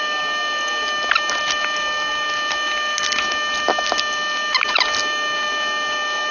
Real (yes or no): yes